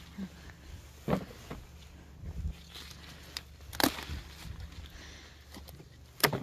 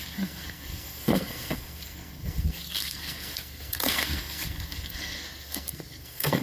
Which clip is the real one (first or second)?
first